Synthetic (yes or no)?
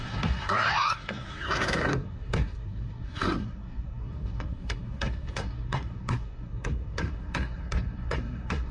yes